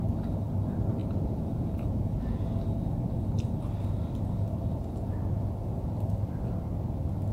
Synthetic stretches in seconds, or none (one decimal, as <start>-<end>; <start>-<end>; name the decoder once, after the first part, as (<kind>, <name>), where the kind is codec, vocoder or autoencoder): 1.0-2.1 (vocoder, Vocos)

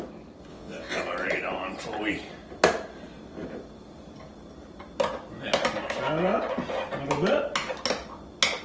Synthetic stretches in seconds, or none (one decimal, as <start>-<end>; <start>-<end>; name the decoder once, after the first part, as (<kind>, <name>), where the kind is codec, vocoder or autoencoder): 0.5-1.0 (vocoder, WaveNeXt)